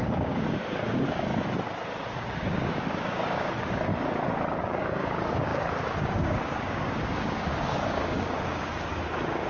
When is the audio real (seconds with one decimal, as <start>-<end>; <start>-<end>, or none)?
1.3-2.1; 3.9-4.6